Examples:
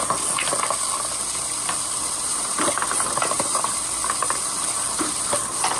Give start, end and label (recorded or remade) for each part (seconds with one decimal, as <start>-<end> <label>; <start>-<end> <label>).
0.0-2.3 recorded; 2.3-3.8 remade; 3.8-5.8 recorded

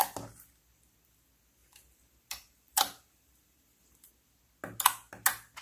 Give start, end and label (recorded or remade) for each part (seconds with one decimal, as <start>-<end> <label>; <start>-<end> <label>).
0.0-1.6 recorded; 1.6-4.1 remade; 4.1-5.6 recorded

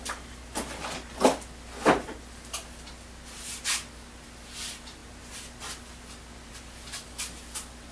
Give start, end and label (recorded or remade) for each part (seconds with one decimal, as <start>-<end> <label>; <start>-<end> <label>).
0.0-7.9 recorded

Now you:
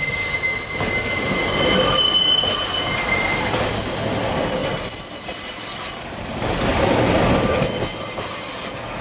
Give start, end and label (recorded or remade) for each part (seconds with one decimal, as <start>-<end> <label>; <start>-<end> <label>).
0.0-9.0 recorded

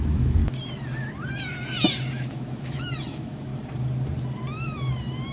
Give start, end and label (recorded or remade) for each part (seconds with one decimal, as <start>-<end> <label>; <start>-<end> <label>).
0.0-0.4 remade; 0.4-2.1 recorded; 2.1-3.5 remade; 3.5-5.3 recorded